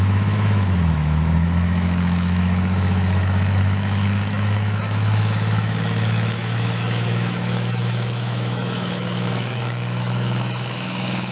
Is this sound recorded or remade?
remade